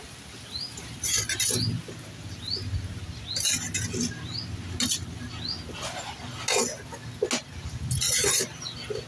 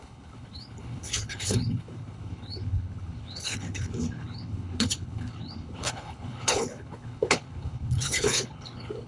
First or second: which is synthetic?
second